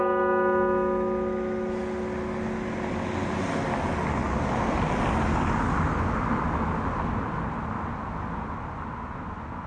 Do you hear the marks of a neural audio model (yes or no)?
no